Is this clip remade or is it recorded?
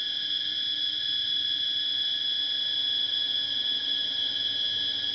recorded